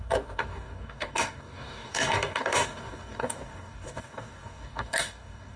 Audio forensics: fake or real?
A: fake